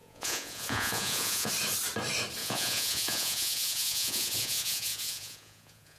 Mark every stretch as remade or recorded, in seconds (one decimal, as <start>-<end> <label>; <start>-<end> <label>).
0.0-1.5 remade; 1.5-2.4 recorded; 2.4-6.0 remade